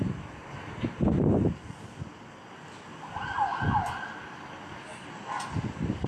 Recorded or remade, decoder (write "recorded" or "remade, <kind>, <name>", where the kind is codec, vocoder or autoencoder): recorded